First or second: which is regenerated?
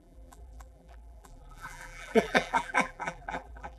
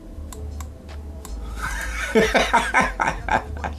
first